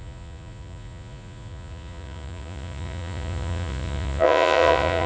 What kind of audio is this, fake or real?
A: fake